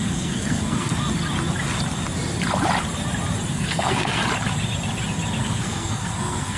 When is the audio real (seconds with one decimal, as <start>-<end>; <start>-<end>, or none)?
0.9-3.5; 4.2-5.4